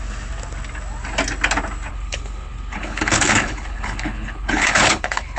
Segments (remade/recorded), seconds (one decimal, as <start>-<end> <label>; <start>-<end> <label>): 0.0-1.9 recorded; 1.9-5.4 remade